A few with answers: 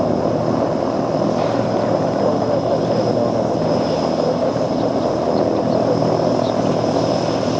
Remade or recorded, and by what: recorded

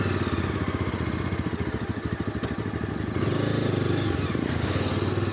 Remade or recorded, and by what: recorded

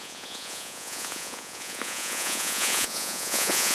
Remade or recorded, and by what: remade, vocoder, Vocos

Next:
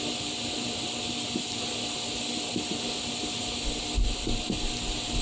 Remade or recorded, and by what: recorded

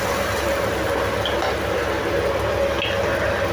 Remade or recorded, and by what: recorded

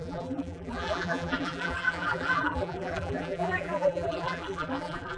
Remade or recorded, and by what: remade, vocoder, BigVGAN v2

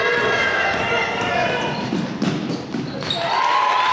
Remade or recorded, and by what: recorded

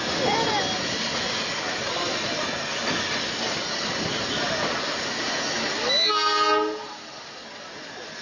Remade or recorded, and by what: recorded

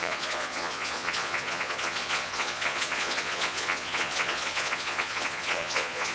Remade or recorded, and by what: remade, vocoder, Vocos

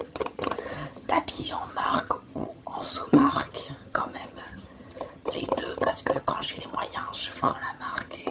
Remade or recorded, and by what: remade, vocoder, HiFi-GAN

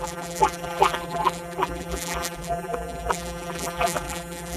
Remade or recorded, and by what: remade, vocoder, BigVGAN v2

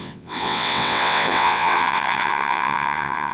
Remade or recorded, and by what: remade, vocoder, WaveNeXt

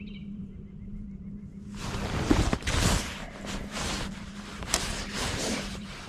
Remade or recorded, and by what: remade, vocoder, BigVGAN v2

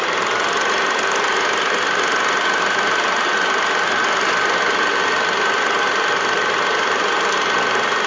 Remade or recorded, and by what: recorded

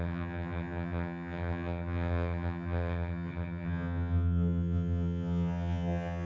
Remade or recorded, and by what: remade, vocoder, HiFi-GAN